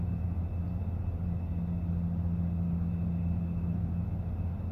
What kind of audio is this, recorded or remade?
recorded